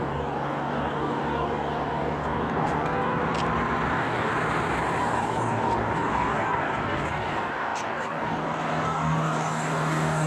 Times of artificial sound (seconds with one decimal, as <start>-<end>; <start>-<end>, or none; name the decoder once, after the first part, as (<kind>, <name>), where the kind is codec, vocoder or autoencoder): 0.0-3.2 (codec, DAC); 3.9-4.3; 5.0-10.3